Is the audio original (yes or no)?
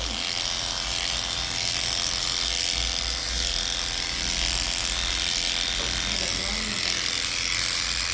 yes